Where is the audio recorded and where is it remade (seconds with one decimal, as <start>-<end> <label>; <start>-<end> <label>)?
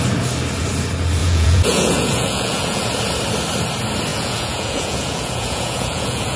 0.0-1.2 recorded; 1.2-2.9 remade; 2.9-4.1 recorded; 4.1-6.4 remade